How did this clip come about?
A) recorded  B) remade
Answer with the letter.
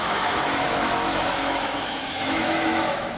B